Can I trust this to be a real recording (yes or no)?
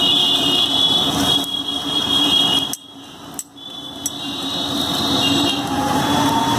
yes